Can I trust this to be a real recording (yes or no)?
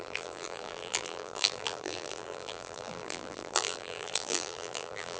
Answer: no